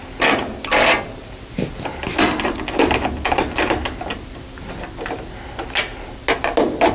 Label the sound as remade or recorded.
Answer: recorded